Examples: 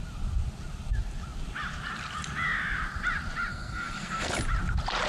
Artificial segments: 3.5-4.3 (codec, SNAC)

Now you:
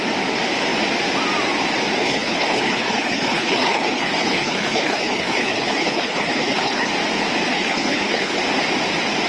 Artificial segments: 2.0-6.9 (codec, HILCodec); 7.5-8.4

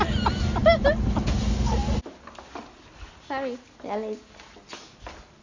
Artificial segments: none

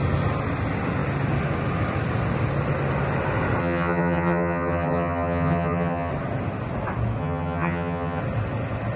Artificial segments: 3.6-6.1 (vocoder, HiFi-GAN); 7.2-8.2

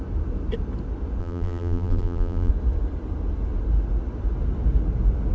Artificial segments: 1.2-2.5 (vocoder, BigVGAN v2)

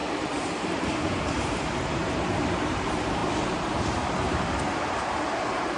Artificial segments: 0.0-5.8 (vocoder, BigVGAN v2)

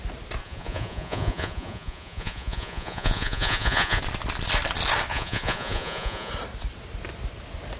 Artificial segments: 0.4-4.0 (vocoder, Vocos); 5.1-6.3

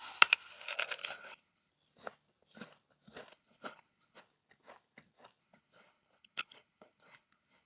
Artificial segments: 1.0-1.7 (codec, HILCodec); 3.3-4.2; 5.4-7.7